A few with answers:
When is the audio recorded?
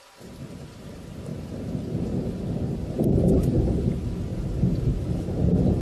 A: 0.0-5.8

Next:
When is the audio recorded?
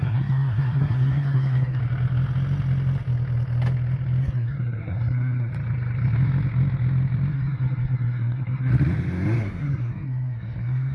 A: 1.8-4.2; 5.5-7.3; 8.7-9.4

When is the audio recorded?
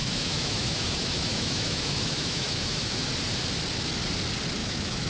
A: 3.1-4.6